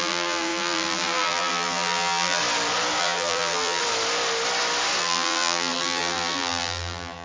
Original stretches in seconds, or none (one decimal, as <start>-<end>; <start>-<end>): 2.4-3.0; 3.8-5.0